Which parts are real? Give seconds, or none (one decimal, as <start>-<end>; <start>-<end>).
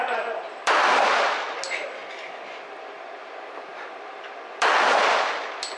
0.0-5.8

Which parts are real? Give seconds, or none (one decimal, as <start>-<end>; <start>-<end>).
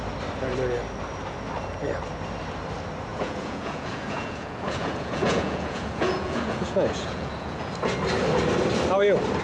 0.0-3.1; 7.7-9.4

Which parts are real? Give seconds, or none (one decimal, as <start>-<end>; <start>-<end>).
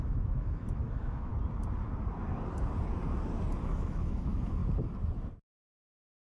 1.3-3.6; 4.6-5.5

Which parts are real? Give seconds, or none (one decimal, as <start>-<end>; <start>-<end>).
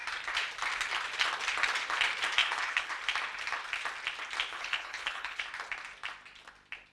0.0-2.4; 2.9-4.5; 5.4-6.9